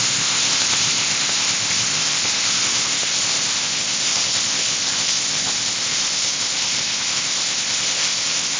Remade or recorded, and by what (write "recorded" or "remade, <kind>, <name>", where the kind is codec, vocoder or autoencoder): remade, codec, ZipCodec